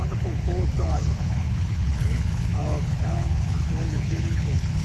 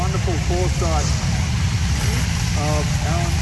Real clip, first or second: second